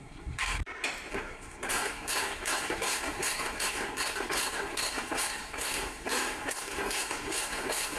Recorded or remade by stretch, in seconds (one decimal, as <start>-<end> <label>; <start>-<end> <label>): 0.0-0.6 remade; 0.6-1.1 recorded; 1.1-8.0 remade